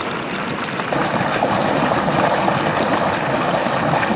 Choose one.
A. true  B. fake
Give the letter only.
A